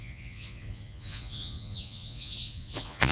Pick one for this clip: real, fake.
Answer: fake